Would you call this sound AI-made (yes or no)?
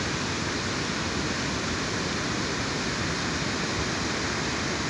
no